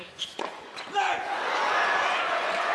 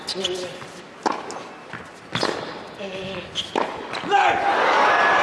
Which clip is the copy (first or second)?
first